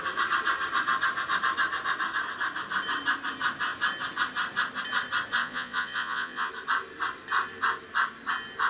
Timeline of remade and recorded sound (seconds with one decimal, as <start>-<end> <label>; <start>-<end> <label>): 0.0-5.4 recorded; 5.4-6.5 remade; 6.5-8.7 recorded